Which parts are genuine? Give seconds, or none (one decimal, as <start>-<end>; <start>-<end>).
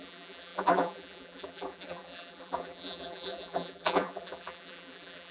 none